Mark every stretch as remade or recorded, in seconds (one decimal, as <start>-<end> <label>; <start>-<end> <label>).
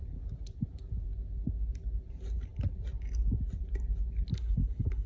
0.0-4.3 recorded; 4.3-5.1 remade